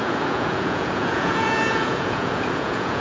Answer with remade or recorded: remade